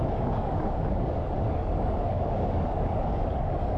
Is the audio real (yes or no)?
no